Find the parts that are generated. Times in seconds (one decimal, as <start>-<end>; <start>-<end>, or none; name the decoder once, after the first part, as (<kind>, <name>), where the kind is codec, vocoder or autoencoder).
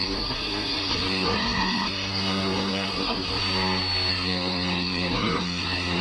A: 0.0-3.4 (codec, SNAC); 4.1-6.0